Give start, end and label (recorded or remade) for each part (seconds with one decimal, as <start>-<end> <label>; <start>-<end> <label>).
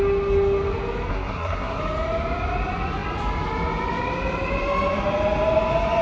0.0-1.1 recorded; 1.1-1.8 remade; 1.8-6.0 recorded